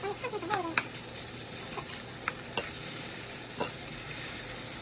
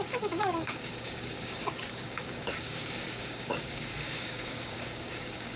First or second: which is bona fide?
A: first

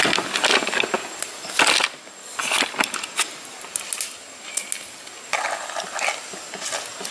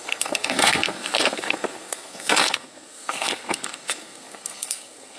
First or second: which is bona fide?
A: first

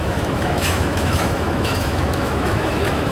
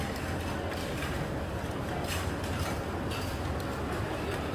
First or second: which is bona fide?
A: second